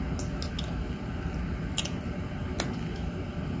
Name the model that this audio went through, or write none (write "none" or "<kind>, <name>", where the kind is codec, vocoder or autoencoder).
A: none